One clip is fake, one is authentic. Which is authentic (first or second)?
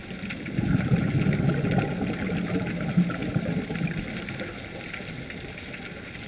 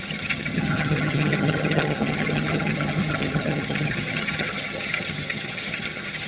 first